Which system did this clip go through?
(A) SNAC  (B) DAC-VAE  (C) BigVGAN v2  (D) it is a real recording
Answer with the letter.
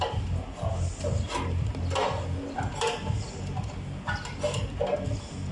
D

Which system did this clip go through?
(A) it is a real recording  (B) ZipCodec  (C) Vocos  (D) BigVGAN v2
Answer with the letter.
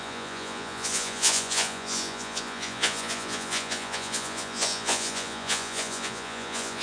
C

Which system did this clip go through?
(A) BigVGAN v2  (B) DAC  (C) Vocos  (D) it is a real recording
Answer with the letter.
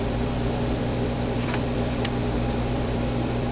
A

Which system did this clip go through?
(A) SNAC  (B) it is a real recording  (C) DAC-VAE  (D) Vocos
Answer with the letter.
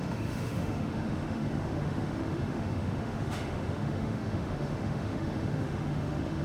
C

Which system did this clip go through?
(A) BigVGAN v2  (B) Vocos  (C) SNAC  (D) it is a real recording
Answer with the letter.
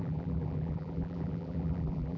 A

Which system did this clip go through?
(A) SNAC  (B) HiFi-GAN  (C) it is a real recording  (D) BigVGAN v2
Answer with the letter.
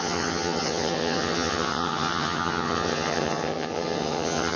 B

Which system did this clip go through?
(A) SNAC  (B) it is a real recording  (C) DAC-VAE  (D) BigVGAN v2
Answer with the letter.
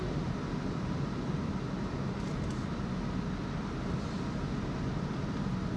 B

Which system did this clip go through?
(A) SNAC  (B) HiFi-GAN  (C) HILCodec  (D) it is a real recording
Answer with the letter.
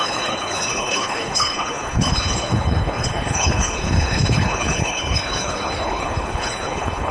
C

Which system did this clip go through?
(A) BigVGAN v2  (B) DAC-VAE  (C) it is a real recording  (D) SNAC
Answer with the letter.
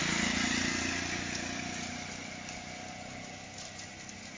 C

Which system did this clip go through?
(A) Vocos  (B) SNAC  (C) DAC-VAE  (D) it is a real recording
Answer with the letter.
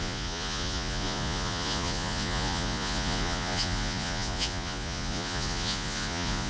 A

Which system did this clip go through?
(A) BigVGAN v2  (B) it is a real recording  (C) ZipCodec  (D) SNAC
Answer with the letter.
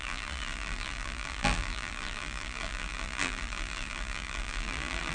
A